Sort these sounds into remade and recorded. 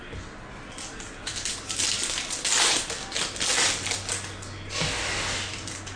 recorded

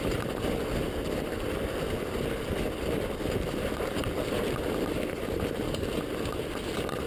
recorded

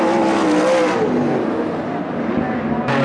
recorded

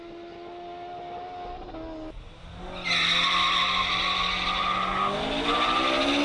recorded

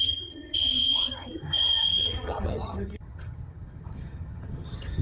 remade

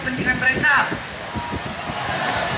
recorded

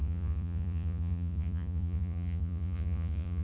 remade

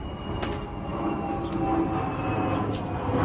recorded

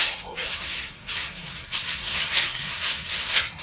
remade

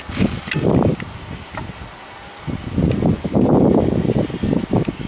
recorded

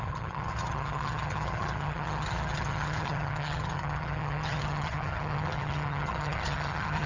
remade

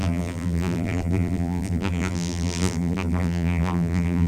remade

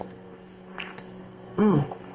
remade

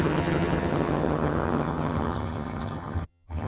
remade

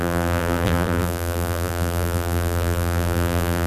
remade